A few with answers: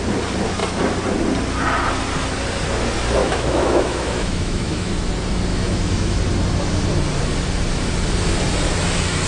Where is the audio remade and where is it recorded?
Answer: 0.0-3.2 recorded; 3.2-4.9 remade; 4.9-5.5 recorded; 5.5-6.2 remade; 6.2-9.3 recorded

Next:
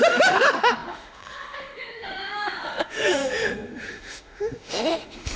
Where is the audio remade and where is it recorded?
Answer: 0.0-5.4 remade

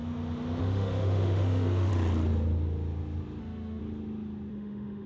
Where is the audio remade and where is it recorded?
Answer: 0.0-0.6 recorded; 0.6-1.9 remade; 1.9-3.4 recorded; 3.4-3.8 remade; 3.8-4.5 recorded; 4.5-5.1 remade

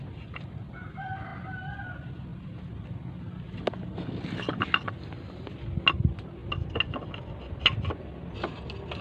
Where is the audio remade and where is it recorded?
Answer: 0.0-9.0 recorded

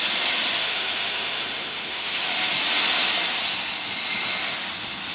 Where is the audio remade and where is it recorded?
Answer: 0.0-0.6 recorded; 0.6-2.3 remade; 2.3-5.1 recorded